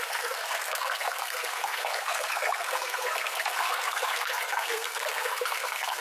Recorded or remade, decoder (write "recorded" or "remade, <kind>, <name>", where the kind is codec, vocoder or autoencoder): remade, codec, SNAC